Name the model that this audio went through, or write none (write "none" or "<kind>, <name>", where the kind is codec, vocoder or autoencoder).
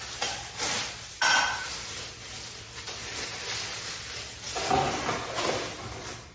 none